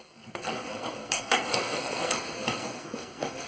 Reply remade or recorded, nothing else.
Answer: remade